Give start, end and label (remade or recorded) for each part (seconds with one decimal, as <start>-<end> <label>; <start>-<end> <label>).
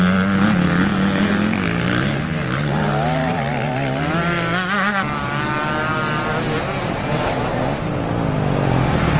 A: 0.0-9.2 recorded